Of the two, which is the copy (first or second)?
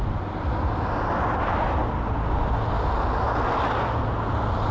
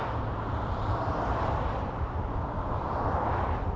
second